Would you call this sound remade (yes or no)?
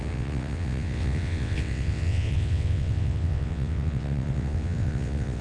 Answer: yes